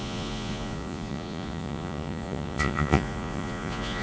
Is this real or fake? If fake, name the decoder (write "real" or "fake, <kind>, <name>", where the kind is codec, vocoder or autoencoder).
fake, vocoder, Vocos